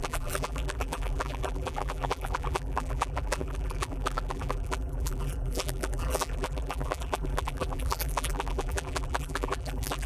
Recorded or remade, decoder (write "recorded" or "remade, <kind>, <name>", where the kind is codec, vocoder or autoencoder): remade, vocoder, BigVGAN v2